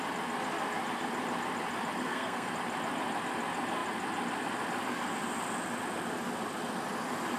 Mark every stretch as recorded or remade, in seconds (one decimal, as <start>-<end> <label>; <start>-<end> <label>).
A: 0.0-2.0 recorded; 2.0-2.5 remade; 2.5-7.4 recorded

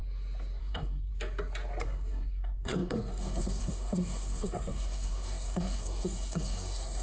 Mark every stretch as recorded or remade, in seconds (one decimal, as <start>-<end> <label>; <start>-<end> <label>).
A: 0.0-0.6 recorded; 0.6-1.1 remade; 1.1-1.8 recorded; 1.8-7.0 remade

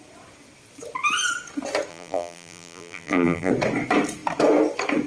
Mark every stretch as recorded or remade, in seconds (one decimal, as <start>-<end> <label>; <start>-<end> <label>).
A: 0.0-1.9 recorded; 1.9-3.5 remade; 3.5-5.1 recorded

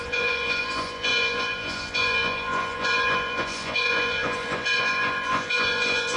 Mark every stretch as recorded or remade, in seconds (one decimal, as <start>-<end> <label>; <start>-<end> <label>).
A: 0.0-6.2 remade

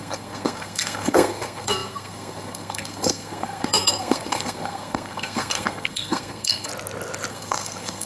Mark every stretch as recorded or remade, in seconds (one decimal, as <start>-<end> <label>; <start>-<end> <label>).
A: 0.0-6.7 remade; 6.7-7.3 recorded; 7.3-8.1 remade

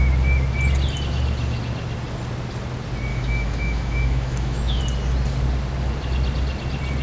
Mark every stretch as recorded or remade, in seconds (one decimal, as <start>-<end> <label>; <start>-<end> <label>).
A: 0.0-3.1 recorded; 3.1-4.8 remade; 4.8-7.0 recorded

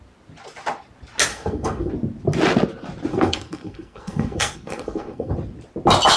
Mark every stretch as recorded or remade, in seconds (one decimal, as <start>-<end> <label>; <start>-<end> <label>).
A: 0.0-1.3 recorded; 1.3-1.9 remade; 1.9-3.1 recorded; 3.1-5.3 remade; 5.3-6.2 recorded